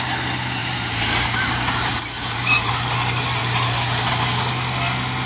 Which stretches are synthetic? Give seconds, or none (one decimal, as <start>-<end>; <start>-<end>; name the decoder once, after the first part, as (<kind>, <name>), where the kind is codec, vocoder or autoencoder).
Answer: 0.6-2.7 (vocoder, BigVGAN v2)